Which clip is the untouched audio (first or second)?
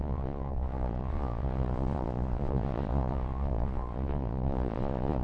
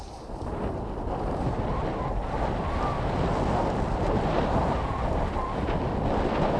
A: second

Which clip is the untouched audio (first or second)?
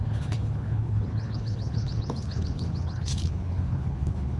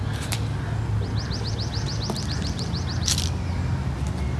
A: second